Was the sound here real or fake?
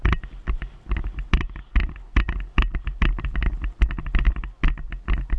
real